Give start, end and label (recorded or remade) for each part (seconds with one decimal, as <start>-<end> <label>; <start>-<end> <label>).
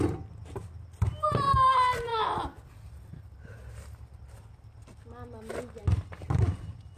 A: 0.0-5.8 recorded; 5.8-6.4 remade; 6.4-7.0 recorded